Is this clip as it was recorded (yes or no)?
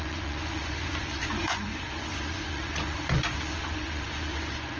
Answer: no